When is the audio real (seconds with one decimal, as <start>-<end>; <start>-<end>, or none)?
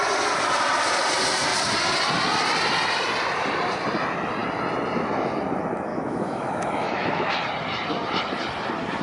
0.0-5.9; 7.3-9.0